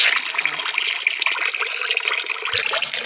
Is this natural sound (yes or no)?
yes